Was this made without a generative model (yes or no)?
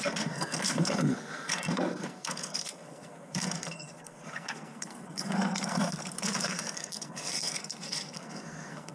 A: no